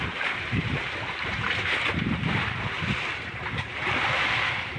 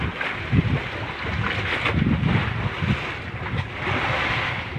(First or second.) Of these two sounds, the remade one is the first